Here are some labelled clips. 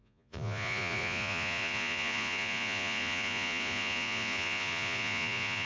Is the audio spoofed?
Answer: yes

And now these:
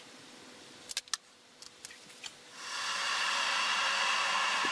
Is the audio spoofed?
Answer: no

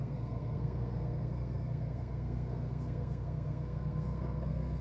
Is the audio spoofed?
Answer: yes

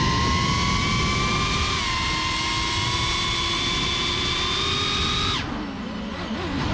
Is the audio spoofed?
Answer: no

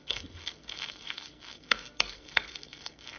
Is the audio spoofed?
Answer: yes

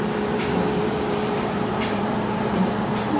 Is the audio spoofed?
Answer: yes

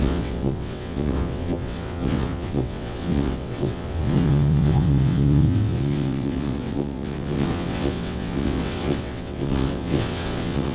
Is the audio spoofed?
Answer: yes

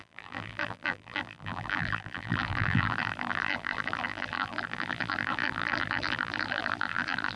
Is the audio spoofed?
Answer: yes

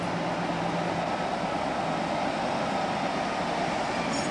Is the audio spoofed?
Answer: no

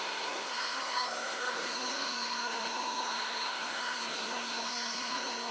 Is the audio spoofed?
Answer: yes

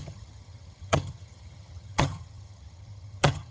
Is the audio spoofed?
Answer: yes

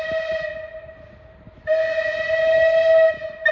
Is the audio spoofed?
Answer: no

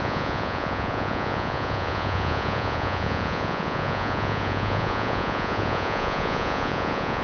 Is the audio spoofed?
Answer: yes